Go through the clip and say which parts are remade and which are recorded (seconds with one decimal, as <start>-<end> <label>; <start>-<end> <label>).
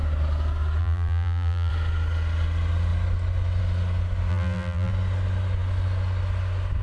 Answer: 0.0-0.8 recorded; 0.8-1.7 remade; 1.7-4.3 recorded; 4.3-4.9 remade; 4.9-6.8 recorded